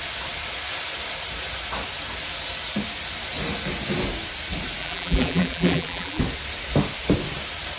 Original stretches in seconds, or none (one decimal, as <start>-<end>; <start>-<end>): 0.0-4.8; 6.2-7.8